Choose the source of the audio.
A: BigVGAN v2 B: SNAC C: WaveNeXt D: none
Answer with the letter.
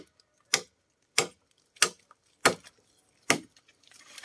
D